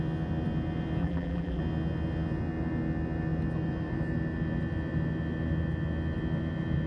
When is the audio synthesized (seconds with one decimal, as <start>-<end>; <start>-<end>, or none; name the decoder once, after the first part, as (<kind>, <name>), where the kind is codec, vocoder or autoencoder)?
1.0-1.6 (vocoder, BigVGAN v2)